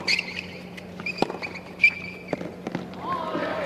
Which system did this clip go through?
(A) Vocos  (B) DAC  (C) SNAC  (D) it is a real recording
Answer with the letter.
D